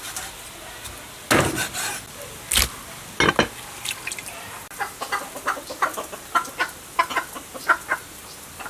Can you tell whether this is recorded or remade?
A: recorded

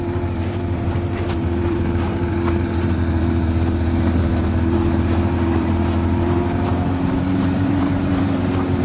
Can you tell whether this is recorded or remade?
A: remade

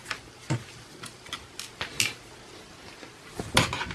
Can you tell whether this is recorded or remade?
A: recorded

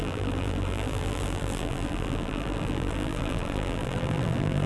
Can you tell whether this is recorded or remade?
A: remade